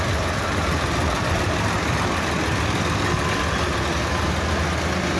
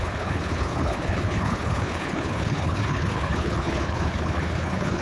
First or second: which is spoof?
second